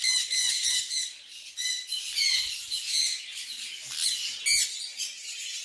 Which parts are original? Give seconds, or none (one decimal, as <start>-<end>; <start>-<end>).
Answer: 0.0-0.4; 1.0-2.6; 3.6-5.6